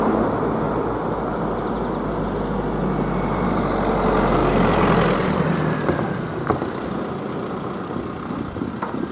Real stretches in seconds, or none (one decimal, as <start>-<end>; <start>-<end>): 0.0-9.1